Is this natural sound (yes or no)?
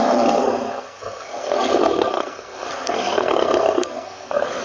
no